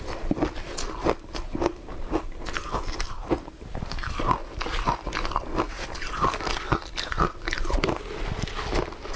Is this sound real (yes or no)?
yes